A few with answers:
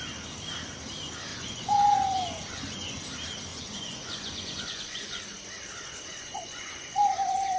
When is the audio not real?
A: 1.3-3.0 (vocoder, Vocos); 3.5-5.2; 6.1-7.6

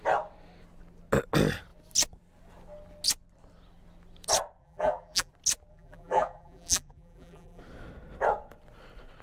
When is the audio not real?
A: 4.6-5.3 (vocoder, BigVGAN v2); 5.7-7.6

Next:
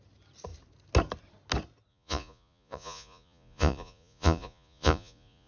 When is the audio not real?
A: 1.9-5.5 (vocoder, Vocos)